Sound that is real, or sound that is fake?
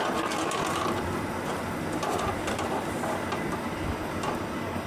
fake